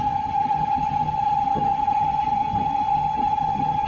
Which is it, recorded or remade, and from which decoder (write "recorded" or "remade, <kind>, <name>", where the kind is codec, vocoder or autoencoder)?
remade, vocoder, HiFi-GAN